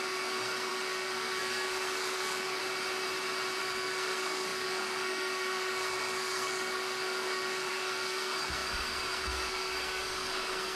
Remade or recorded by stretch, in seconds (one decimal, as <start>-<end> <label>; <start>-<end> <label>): 0.0-2.6 remade; 2.6-3.6 recorded; 3.6-10.8 remade